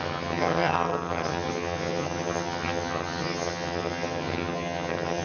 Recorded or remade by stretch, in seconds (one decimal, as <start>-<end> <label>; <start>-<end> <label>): 0.0-5.2 remade